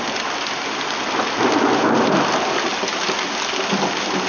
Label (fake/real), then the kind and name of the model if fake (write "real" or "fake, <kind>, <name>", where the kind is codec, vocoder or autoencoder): real